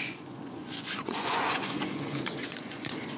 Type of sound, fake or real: fake